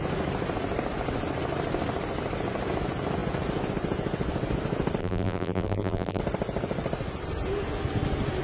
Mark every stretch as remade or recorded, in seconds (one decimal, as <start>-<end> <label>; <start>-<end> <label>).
0.0-5.0 recorded; 5.0-6.2 remade; 6.2-8.4 recorded